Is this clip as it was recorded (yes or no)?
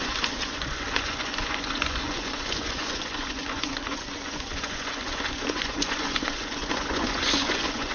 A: no